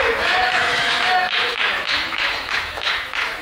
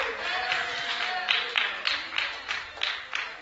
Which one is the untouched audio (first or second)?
second